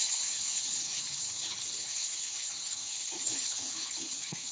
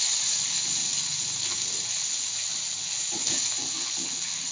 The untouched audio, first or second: second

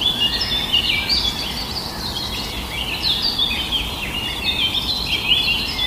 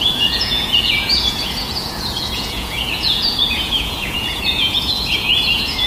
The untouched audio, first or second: first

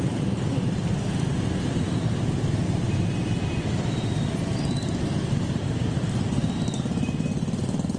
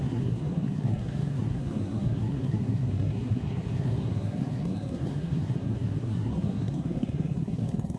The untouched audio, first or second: first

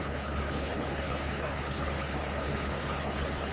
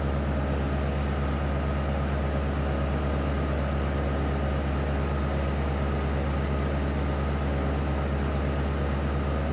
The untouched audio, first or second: second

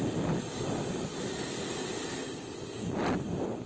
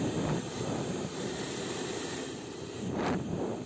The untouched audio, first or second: first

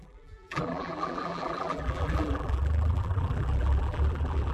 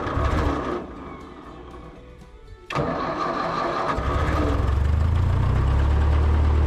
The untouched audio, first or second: second